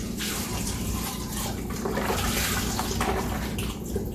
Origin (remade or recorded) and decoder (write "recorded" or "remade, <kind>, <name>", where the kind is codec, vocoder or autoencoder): recorded